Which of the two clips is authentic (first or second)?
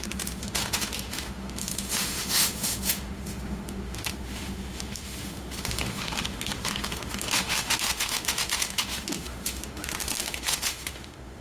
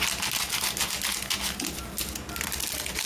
second